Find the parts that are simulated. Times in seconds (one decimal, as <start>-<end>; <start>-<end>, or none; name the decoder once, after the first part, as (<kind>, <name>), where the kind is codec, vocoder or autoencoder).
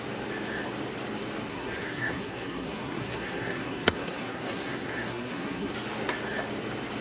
1.5-5.7 (codec, SNAC)